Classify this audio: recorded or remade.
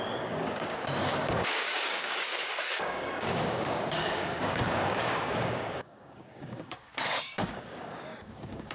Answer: remade